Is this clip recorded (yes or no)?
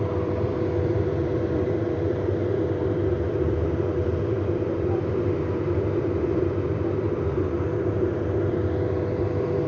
no